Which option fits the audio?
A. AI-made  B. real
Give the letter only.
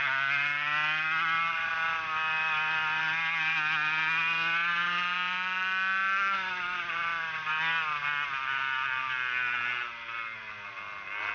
B